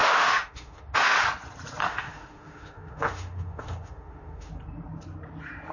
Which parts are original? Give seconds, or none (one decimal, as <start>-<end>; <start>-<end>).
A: 1.2-1.8; 4.5-5.7